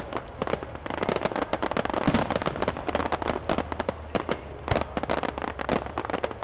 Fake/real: real